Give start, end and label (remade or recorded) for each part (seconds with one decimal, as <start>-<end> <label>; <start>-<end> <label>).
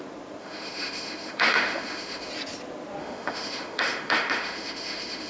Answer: 0.0-0.4 recorded; 0.4-2.3 remade; 2.3-3.0 recorded; 3.0-5.3 remade